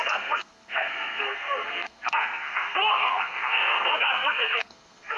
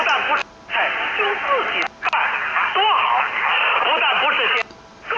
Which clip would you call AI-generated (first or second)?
first